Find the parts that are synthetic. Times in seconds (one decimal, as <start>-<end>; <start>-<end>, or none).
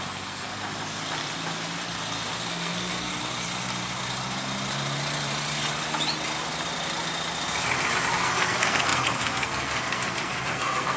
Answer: 0.0-0.5; 2.5-3.1; 8.1-11.0